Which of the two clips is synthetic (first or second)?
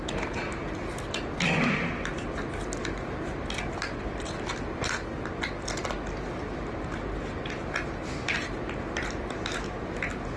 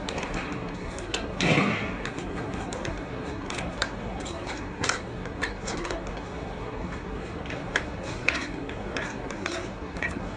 second